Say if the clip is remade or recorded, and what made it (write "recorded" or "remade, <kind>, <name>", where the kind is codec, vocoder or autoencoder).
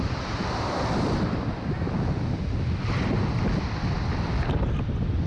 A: recorded